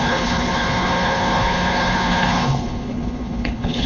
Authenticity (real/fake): fake